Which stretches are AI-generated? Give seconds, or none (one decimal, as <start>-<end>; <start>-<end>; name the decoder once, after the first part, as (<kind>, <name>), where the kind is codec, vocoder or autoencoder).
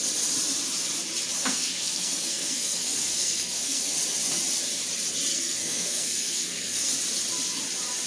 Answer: 1.4-3.9 (codec, SNAC); 5.3-6.9